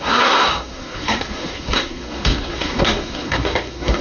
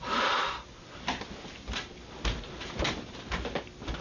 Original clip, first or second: second